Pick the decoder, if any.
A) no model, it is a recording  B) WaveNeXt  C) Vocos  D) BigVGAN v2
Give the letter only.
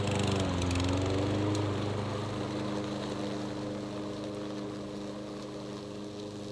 A